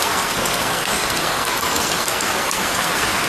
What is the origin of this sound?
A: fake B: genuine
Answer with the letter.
A